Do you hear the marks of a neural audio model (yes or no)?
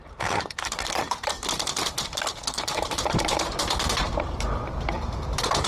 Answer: yes